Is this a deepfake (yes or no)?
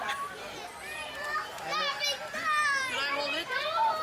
no